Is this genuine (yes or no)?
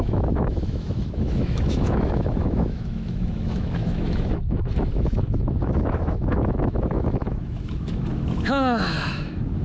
no